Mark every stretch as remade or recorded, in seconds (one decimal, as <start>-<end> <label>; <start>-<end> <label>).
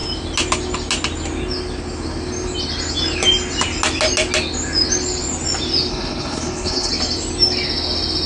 0.0-5.9 recorded; 5.9-6.9 remade; 6.9-8.3 recorded